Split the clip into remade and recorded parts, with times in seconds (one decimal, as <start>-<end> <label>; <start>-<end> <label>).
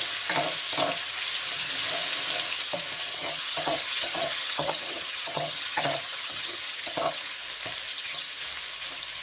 0.0-3.2 recorded; 3.2-7.4 remade; 7.4-7.9 recorded; 7.9-8.4 remade; 8.4-9.2 recorded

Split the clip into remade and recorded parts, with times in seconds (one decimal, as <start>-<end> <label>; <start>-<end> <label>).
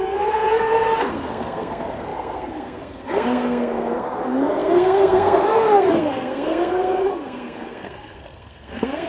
0.0-9.1 remade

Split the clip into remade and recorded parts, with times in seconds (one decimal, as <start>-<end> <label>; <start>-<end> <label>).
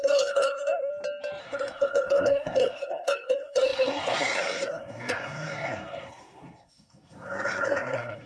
0.0-0.9 remade; 0.9-1.4 recorded; 1.4-8.3 remade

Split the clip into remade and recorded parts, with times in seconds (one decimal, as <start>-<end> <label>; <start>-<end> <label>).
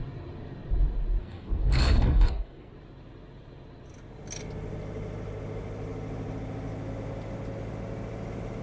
0.0-1.2 recorded; 1.2-2.7 remade; 2.7-8.6 recorded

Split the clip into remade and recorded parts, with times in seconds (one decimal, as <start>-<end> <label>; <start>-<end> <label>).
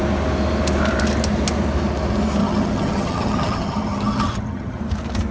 0.0-2.4 recorded; 2.4-4.8 remade; 4.8-5.3 recorded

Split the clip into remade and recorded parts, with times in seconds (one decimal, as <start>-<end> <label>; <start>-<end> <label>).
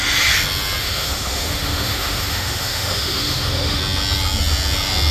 0.0-0.8 recorded; 0.8-3.8 remade; 3.8-5.1 recorded